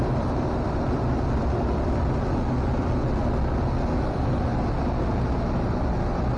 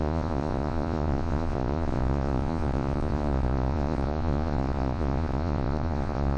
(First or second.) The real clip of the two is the first